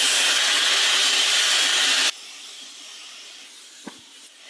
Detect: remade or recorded recorded